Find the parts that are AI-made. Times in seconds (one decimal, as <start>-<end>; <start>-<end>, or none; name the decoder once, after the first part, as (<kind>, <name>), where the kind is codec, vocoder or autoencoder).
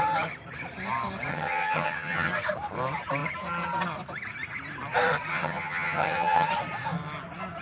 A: 1.3-2.3 (vocoder, HiFi-GAN); 5.3-6.5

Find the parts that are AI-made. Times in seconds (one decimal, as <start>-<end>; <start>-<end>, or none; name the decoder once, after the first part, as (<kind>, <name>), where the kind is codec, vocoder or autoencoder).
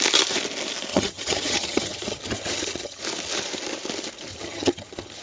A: 0.9-3.0 (vocoder, HiFi-GAN); 4.3-5.2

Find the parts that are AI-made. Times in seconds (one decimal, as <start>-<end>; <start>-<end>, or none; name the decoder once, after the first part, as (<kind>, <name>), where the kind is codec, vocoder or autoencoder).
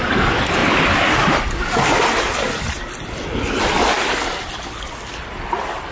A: none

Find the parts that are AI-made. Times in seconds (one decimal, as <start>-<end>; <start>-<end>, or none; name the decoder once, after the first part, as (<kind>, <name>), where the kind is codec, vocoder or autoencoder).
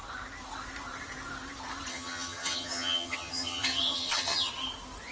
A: 1.9-4.5 (vocoder, HiFi-GAN)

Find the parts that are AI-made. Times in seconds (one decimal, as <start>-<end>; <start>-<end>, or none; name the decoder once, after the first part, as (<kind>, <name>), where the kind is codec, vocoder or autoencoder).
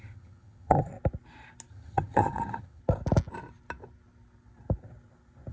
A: 0.0-0.9 (vocoder, HiFi-GAN); 1.7-2.8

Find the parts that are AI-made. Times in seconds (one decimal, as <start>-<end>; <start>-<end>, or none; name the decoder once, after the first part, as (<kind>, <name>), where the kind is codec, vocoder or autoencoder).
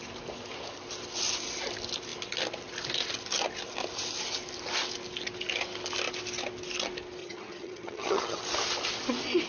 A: 7.2-8.4 (vocoder, HiFi-GAN)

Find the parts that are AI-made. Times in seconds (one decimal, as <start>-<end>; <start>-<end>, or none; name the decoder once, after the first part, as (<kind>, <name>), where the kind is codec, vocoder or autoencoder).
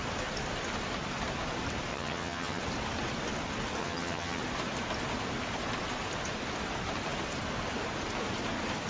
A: 1.9-2.6 (vocoder, HiFi-GAN); 3.8-4.4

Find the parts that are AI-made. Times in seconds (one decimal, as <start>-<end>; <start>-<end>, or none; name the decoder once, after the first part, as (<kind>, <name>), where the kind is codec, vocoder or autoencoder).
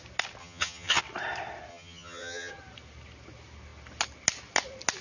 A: 0.4-1.0 (vocoder, HiFi-GAN); 1.7-2.5